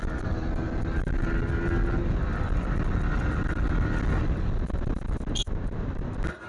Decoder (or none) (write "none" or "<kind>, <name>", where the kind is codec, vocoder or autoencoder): none